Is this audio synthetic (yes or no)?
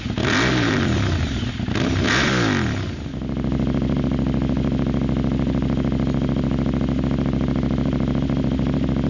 no